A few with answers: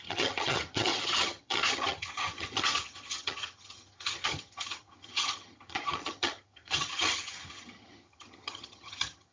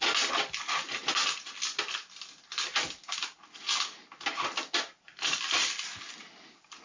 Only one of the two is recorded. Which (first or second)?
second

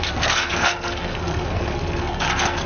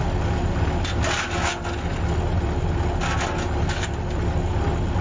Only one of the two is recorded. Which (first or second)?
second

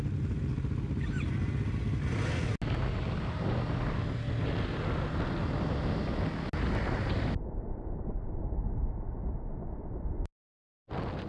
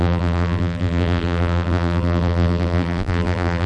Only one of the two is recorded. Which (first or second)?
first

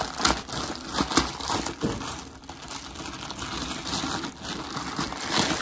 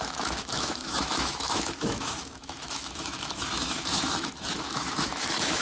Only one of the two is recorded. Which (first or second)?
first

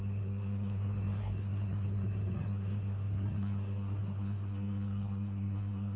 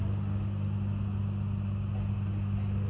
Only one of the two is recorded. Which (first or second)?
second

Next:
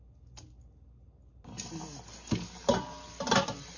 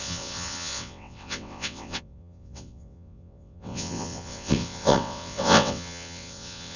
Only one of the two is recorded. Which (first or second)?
first